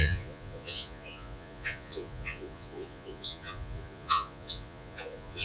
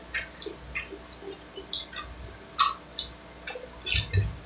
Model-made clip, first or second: first